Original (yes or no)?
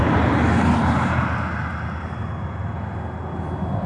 yes